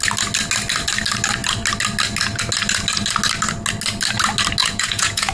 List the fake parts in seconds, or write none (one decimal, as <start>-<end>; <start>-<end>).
4.6-5.3